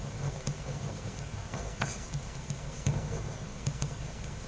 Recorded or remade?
remade